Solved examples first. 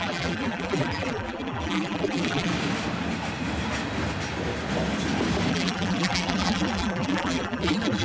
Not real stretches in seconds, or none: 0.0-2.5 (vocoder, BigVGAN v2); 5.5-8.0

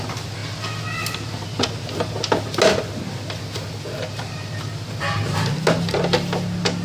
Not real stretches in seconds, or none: none

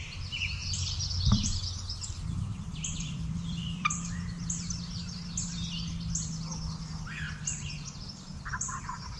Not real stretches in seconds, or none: 0.6-1.5 (vocoder, BigVGAN v2); 2.5-3.9

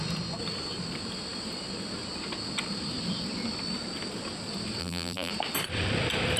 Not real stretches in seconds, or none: 4.8-5.3 (vocoder, BigVGAN v2)